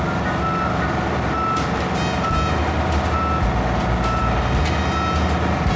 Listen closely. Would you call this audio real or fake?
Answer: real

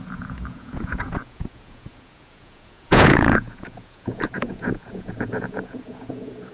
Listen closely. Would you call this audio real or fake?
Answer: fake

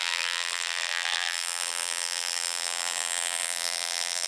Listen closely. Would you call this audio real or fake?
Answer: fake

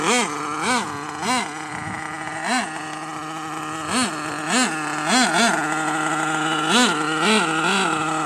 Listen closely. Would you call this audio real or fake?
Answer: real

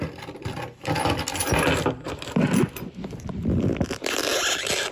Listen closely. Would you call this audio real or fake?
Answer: real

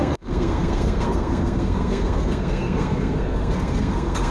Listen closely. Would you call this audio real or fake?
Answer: fake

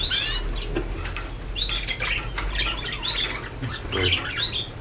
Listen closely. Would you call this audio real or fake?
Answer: real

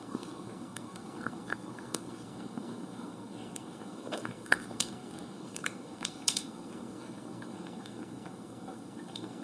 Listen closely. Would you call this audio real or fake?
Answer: fake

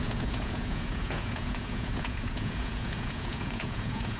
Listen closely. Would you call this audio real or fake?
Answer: fake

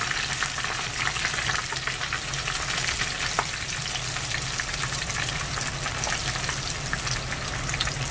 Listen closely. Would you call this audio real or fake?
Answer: real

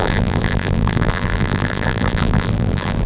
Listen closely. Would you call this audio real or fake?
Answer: fake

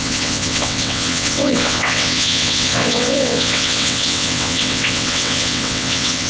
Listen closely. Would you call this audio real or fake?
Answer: fake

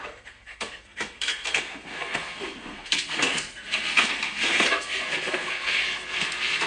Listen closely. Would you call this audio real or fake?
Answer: fake